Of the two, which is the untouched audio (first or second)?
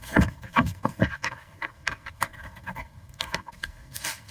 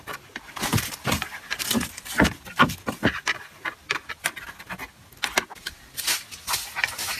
second